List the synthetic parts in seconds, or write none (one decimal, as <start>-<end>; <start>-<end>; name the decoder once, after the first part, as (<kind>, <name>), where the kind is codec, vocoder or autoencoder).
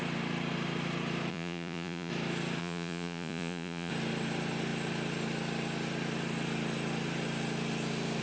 1.3-2.1 (vocoder, Vocos); 2.6-3.9